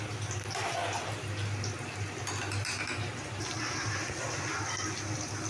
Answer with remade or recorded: recorded